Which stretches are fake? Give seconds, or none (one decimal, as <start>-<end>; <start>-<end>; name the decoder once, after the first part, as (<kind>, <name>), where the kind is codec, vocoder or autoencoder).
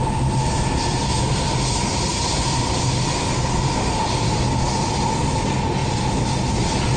none